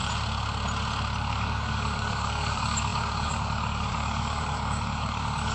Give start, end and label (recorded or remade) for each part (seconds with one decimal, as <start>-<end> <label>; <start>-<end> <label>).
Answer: 0.0-1.2 recorded; 1.2-5.5 remade